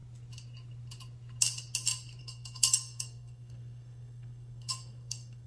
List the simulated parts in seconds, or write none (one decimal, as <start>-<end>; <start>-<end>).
2.2-5.5